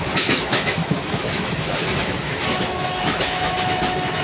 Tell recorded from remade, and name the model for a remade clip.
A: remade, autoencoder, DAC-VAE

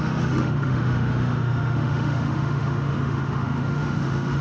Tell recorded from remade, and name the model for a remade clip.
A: remade, autoencoder, DAC-VAE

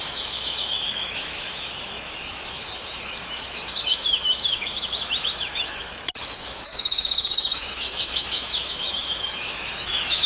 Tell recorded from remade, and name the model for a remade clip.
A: remade, autoencoder, DAC-VAE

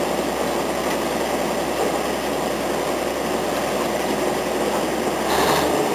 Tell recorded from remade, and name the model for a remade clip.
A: recorded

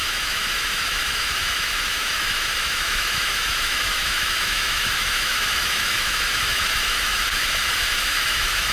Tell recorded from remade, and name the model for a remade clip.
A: remade, autoencoder, DAC-VAE